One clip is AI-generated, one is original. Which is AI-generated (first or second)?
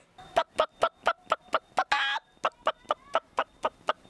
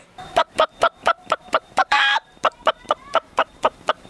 second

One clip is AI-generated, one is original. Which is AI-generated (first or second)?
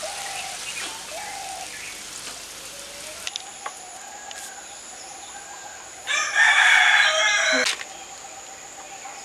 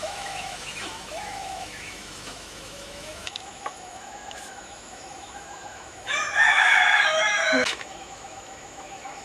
second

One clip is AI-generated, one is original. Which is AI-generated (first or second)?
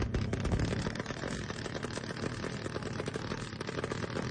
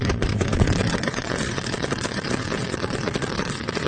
second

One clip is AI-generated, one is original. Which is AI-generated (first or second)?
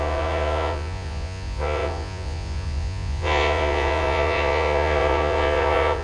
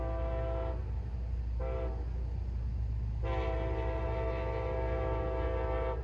first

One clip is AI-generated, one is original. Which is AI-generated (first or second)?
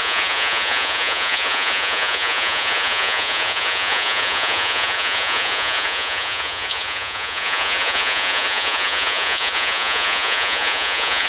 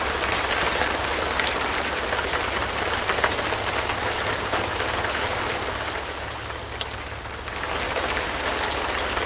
first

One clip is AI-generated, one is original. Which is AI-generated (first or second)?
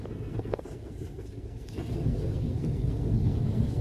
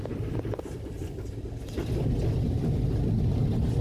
first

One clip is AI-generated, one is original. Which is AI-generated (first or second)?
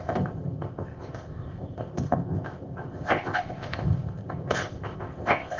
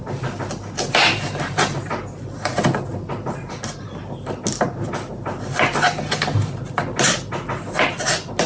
first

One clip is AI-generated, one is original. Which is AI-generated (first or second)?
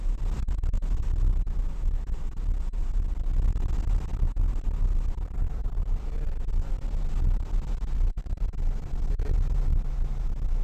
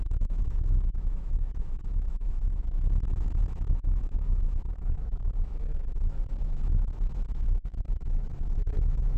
second